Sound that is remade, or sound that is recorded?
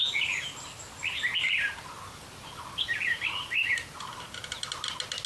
recorded